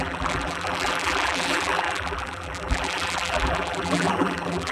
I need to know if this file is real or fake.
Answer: fake